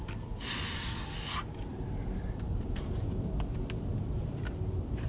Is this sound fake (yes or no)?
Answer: yes